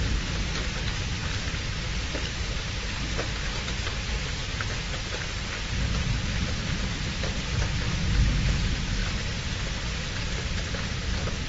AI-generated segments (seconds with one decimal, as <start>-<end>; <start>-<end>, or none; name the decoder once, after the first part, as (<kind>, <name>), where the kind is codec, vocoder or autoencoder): 1.2-3.3 (vocoder, BigVGAN v2)